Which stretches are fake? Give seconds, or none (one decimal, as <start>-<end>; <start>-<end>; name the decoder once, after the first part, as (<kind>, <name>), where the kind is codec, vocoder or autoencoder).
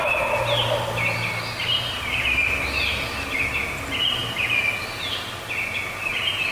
none